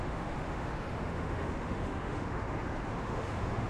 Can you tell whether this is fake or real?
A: fake